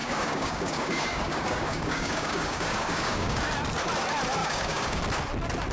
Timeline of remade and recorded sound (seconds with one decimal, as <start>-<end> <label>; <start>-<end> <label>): 0.0-3.4 remade; 3.4-4.4 recorded; 4.4-5.0 remade; 5.0-5.7 recorded